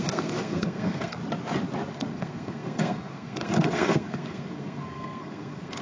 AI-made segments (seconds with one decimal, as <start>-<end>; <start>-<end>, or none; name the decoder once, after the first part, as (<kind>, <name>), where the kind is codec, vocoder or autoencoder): 0.0-1.2 (codec, SNAC); 1.9-5.8

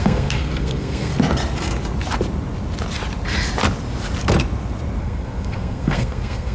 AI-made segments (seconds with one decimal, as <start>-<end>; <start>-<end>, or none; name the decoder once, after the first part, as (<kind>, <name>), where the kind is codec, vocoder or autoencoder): 0.0-1.1 (codec, SNAC); 5.0-6.5

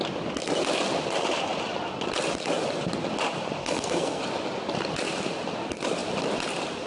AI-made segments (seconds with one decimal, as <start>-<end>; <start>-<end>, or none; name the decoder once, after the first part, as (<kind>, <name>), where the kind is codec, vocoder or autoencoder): 3.6-4.2 (codec, SNAC)

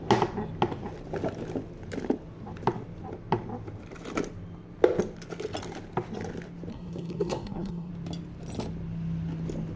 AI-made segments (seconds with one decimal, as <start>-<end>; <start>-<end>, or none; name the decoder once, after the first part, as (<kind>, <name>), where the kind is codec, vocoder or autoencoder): 6.7-7.9 (codec, SNAC)

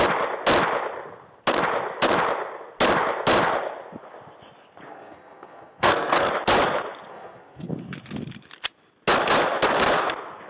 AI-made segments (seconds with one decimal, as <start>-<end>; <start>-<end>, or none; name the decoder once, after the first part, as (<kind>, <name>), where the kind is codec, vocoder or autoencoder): 4.9-6.3 (codec, SNAC); 7.1-7.7

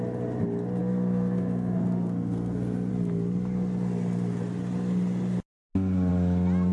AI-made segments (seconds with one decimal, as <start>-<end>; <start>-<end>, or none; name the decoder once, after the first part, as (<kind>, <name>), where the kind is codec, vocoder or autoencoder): 0.8-2.9 (codec, SNAC)

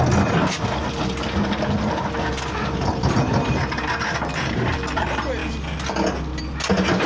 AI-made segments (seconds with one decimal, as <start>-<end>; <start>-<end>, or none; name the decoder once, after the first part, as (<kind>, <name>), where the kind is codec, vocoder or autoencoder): none

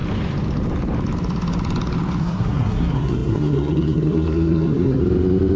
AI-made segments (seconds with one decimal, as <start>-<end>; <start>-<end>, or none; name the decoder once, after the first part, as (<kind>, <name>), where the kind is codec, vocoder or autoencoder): 2.2-5.0 (codec, SNAC)